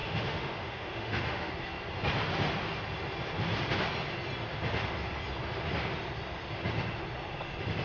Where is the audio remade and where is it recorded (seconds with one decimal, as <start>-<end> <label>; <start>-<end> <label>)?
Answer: 0.0-1.5 remade; 1.5-7.8 recorded